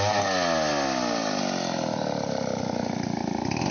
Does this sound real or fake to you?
real